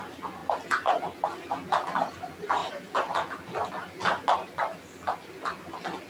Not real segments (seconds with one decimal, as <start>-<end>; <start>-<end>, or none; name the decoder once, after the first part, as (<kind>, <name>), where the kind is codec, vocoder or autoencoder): 2.6-5.6 (vocoder, BigVGAN v2)